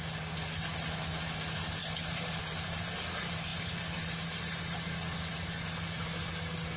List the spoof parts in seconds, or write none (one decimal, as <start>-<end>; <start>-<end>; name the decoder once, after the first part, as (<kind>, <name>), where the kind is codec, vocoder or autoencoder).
none